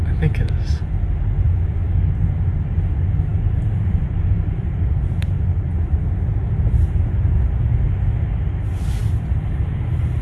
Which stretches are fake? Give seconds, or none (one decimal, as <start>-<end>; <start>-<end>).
3.3-4.7